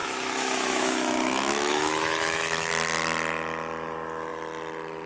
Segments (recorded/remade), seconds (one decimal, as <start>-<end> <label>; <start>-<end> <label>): 0.0-2.7 remade; 2.7-5.1 recorded